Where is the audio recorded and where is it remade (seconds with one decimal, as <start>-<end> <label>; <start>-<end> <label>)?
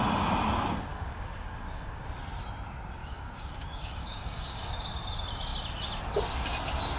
0.0-0.9 recorded; 0.9-2.0 remade; 2.0-3.0 recorded; 3.0-4.7 remade; 4.7-7.0 recorded